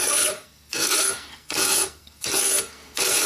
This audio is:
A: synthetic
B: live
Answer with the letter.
A